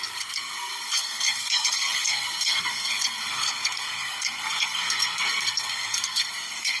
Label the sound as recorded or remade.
remade